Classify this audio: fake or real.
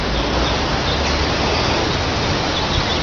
real